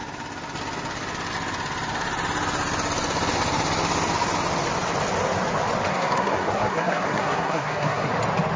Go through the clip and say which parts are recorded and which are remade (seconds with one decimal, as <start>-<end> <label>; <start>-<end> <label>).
0.0-5.9 recorded; 5.9-8.1 remade; 8.1-8.6 recorded